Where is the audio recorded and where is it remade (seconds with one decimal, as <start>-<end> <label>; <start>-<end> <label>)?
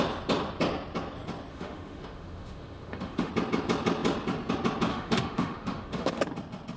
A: 0.0-1.5 recorded; 1.5-3.3 remade; 3.3-4.9 recorded; 4.9-6.2 remade; 6.2-6.8 recorded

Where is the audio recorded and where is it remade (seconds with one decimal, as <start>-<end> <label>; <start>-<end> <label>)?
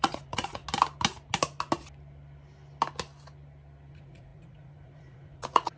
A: 0.0-0.6 remade; 0.6-3.9 recorded; 3.9-5.8 remade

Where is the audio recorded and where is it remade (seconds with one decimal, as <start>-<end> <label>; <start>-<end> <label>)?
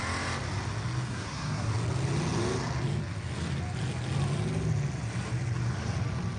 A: 0.0-1.1 recorded; 1.1-1.7 remade; 1.7-6.4 recorded